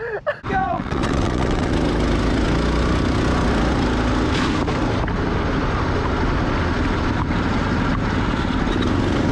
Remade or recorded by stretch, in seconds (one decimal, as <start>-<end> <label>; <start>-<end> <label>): 0.0-0.6 recorded; 0.6-1.7 remade; 1.7-9.3 recorded